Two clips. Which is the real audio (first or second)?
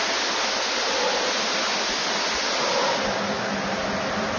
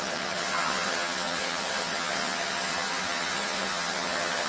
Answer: first